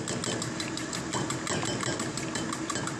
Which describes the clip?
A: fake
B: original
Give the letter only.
B